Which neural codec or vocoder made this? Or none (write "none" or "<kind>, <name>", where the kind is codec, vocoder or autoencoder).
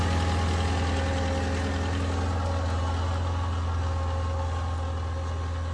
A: none